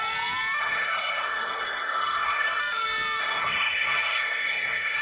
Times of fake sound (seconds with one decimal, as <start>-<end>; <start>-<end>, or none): 0.6-2.6; 3.2-5.0

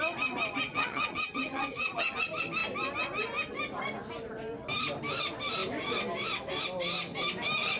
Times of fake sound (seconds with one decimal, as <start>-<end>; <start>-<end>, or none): 0.7-2.1

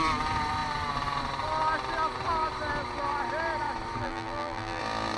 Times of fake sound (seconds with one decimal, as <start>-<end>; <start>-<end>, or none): 4.0-4.8

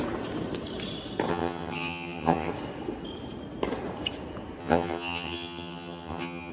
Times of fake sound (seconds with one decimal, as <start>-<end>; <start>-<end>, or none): 1.3-2.5; 4.6-6.5

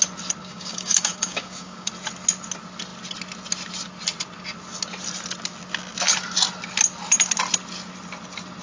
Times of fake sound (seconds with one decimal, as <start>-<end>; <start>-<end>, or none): 0.4-1.9

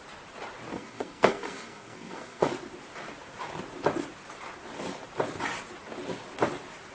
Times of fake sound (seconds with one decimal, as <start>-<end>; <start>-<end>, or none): 0.7-2.5